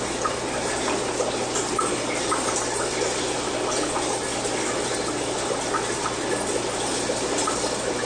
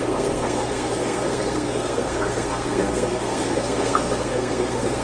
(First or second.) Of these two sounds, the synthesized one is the second